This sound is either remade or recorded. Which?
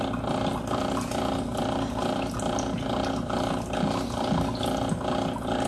recorded